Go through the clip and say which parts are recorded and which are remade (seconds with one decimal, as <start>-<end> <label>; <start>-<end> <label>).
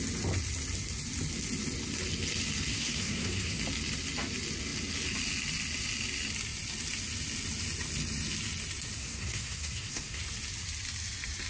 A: 0.0-2.7 recorded; 2.7-3.6 remade; 3.6-9.0 recorded; 9.0-10.2 remade; 10.2-11.5 recorded